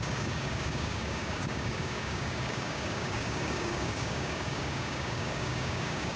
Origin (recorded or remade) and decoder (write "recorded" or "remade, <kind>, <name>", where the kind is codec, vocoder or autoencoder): remade, codec, DAC